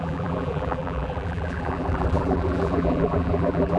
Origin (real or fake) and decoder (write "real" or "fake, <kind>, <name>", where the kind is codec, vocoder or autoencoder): fake, vocoder, BigVGAN v2